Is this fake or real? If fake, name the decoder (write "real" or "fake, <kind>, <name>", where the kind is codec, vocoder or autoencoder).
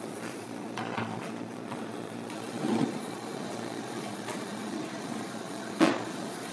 fake, vocoder, Vocos